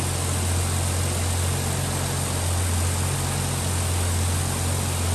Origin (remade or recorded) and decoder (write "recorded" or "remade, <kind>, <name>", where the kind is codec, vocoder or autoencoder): recorded